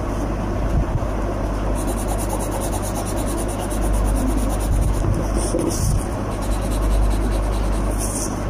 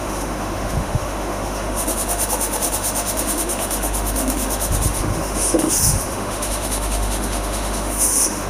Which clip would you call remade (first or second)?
second